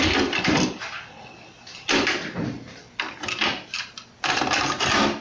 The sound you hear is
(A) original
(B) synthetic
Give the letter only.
A